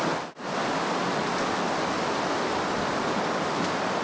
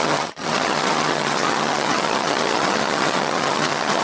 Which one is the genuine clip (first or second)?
first